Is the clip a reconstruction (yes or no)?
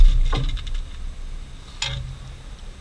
no